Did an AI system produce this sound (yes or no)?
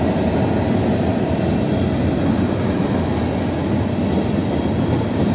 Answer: no